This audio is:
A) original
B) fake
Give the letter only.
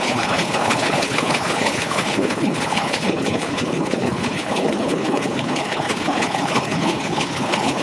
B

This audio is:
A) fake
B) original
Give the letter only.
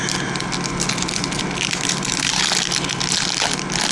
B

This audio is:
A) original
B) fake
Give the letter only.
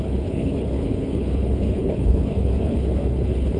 B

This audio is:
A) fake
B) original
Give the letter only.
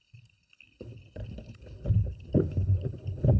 A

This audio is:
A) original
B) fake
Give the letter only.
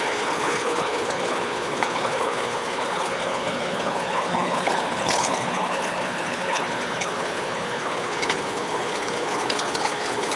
B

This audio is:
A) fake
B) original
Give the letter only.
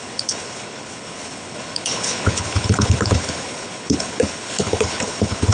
A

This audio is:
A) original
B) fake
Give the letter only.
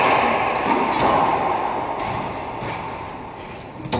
A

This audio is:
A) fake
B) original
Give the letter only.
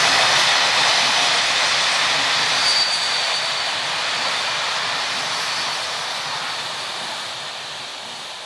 B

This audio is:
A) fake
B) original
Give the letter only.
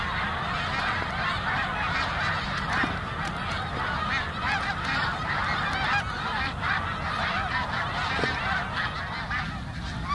B